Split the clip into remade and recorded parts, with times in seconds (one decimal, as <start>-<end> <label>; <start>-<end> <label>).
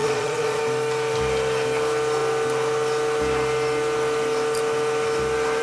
0.0-0.6 remade; 0.6-5.6 recorded